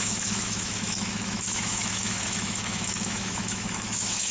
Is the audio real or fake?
fake